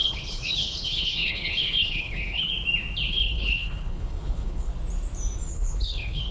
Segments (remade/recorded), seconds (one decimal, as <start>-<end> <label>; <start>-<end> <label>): 0.0-2.5 remade; 2.5-3.1 recorded; 3.1-4.7 remade; 4.7-5.5 recorded; 5.5-6.3 remade